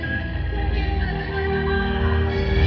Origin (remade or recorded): remade